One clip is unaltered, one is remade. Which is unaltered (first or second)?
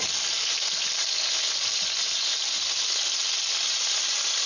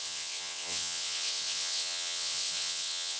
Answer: first